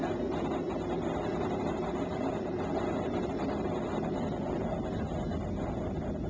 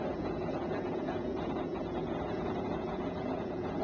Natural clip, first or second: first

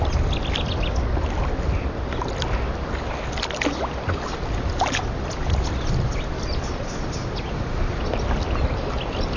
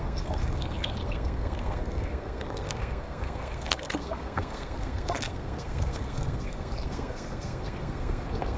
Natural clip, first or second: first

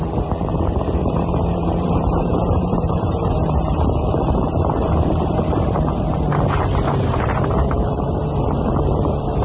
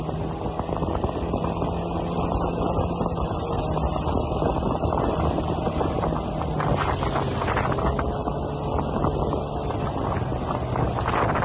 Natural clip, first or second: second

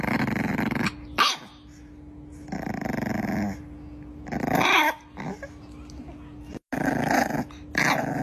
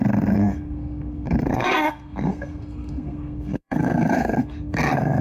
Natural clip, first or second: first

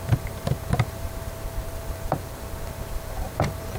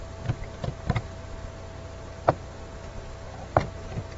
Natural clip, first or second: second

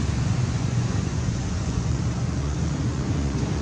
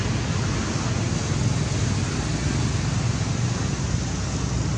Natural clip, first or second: second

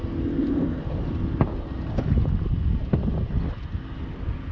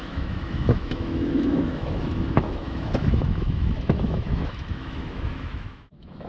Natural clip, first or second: first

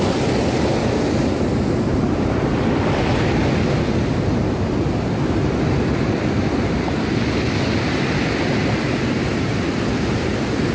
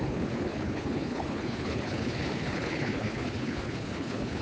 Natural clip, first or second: first